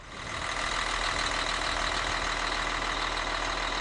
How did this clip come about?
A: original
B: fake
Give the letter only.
A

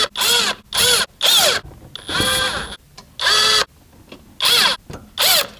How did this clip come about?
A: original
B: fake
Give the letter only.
A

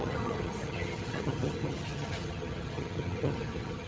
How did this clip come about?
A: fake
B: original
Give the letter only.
A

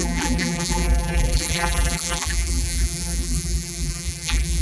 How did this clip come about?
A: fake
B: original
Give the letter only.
A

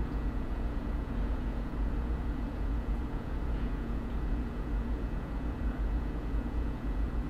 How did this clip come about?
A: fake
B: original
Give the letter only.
A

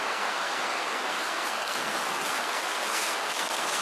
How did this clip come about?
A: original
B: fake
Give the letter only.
B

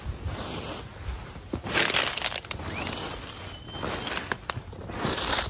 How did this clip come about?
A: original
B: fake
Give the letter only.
A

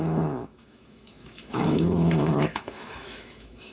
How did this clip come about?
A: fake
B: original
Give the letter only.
A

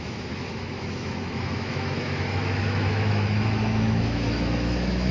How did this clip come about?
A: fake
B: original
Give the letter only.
A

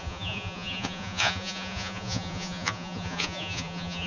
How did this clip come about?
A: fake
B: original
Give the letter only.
A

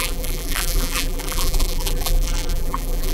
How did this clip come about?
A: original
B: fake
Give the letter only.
B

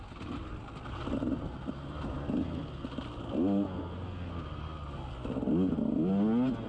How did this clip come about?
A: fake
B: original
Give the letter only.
B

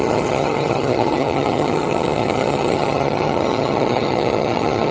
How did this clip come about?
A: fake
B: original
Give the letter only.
A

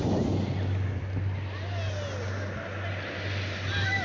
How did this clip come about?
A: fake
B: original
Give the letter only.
B